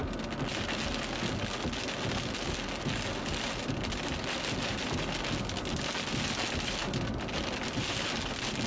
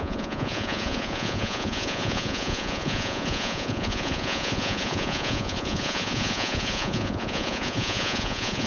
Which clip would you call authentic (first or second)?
first